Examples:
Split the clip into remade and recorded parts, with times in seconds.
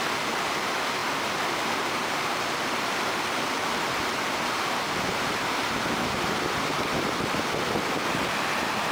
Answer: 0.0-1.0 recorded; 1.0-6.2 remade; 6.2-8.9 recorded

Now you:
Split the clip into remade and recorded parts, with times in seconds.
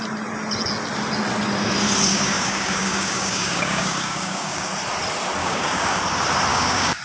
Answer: 0.0-2.1 recorded; 2.1-4.7 remade; 4.7-5.4 recorded; 5.4-6.0 remade; 6.0-6.5 recorded; 6.5-7.0 remade